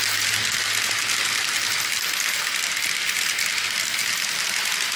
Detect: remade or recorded recorded